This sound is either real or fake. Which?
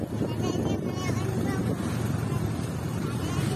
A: real